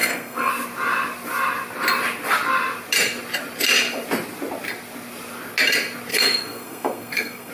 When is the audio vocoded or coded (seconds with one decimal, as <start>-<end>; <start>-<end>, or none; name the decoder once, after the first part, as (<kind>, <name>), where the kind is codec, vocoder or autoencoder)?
0.0-0.5 (codec, SNAC); 6.1-7.5